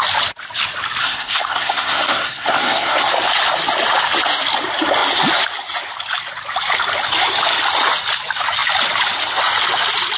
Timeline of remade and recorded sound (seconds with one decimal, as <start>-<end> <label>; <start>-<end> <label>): 0.0-1.0 recorded; 1.0-3.1 remade; 3.1-10.2 recorded